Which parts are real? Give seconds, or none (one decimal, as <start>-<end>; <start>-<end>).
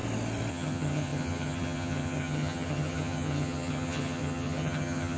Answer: 0.0-0.5